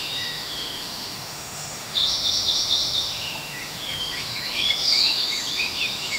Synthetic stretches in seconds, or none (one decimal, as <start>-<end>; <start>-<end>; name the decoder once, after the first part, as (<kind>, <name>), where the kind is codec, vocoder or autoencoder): 0.0-6.2 (autoencoder, DAC-VAE)